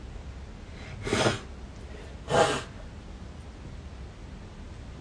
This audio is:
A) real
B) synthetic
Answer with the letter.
A